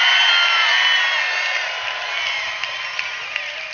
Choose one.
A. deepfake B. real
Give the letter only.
B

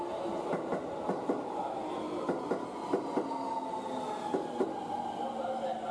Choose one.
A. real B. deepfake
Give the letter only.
A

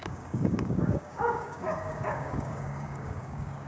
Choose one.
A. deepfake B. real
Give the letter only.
A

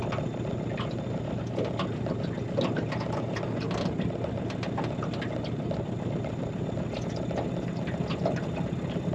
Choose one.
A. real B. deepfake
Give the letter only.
A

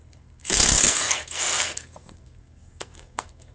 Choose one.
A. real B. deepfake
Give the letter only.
B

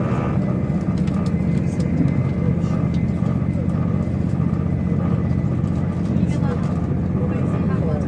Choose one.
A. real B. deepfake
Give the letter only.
A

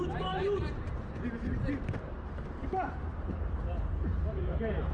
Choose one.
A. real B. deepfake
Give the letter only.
B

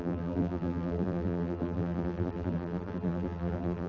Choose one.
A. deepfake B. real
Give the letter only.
A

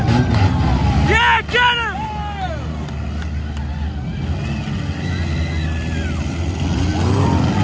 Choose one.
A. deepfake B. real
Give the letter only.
B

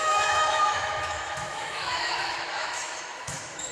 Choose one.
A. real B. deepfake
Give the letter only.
B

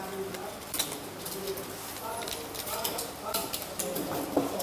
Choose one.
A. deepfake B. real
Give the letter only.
B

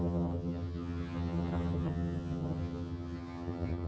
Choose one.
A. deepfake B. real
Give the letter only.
A